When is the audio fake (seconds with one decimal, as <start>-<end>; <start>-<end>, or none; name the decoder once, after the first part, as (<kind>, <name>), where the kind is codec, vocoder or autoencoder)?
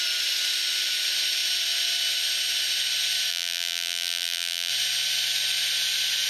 3.3-4.7 (vocoder, BigVGAN v2)